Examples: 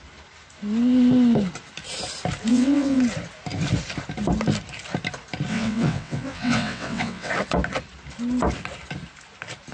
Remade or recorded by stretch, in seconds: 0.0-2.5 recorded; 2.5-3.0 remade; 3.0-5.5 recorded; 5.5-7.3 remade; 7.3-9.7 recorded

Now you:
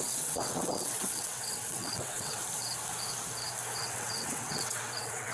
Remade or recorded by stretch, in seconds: 0.0-2.4 remade; 2.4-3.8 recorded; 3.8-5.3 remade

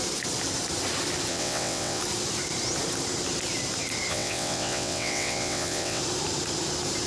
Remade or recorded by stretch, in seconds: 0.0-1.3 recorded; 1.3-2.0 remade; 2.0-4.1 recorded; 4.1-6.0 remade; 6.0-7.1 recorded

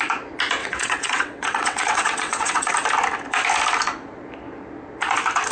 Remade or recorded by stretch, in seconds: 0.0-0.6 recorded; 0.6-2.7 remade; 2.7-5.5 recorded

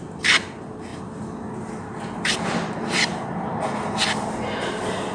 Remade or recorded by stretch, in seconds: 0.0-5.1 recorded

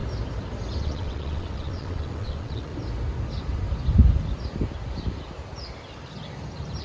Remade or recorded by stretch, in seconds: 0.0-0.8 recorded; 0.8-2.7 remade; 2.7-6.8 recorded

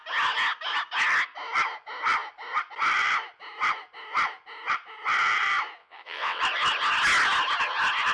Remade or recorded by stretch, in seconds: 0.0-5.8 recorded; 5.8-6.4 remade; 6.4-8.1 recorded

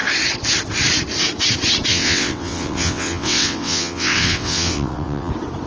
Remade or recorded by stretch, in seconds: 0.0-1.9 recorded; 1.9-5.3 remade; 5.3-5.7 recorded